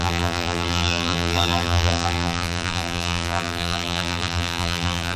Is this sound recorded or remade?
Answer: remade